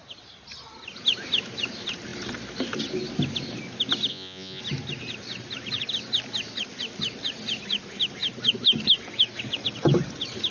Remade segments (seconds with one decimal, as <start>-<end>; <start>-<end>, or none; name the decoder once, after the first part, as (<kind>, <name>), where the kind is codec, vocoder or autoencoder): 4.1-4.6 (vocoder, Vocos)